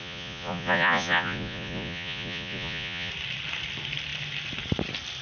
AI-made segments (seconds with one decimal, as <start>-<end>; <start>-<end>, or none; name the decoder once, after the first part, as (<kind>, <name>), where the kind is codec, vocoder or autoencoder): 0.0-3.1 (vocoder, Vocos)